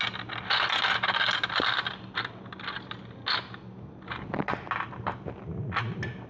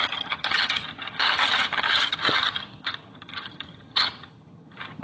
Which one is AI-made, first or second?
second